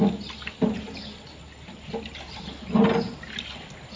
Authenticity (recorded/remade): recorded